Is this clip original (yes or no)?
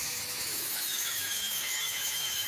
no